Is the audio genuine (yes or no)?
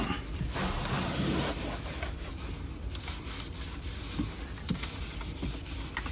yes